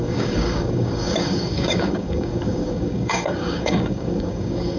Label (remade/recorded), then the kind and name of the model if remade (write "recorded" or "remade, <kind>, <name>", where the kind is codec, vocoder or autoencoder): remade, codec, DAC